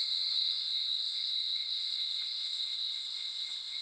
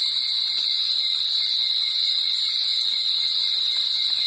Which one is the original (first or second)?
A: second